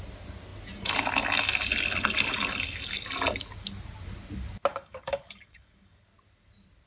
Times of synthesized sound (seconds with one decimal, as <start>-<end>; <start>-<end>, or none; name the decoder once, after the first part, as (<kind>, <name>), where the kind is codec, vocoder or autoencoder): 4.7-6.0 (codec, DAC)